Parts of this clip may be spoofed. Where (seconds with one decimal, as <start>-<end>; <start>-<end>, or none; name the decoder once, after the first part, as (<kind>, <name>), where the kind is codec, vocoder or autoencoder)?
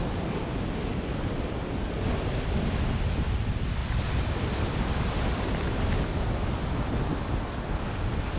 3.8-5.9 (vocoder, BigVGAN v2)